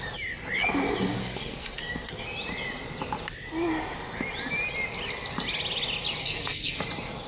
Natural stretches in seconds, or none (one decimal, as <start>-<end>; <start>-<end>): 0.0-1.2; 2.2-6.2; 6.8-7.3